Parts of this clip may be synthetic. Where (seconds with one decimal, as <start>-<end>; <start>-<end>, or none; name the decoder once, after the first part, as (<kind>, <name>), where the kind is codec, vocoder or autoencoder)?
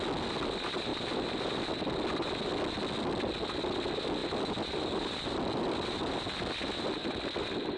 0.9-1.8 (vocoder, BigVGAN v2); 4.2-6.5; 7.0-7.8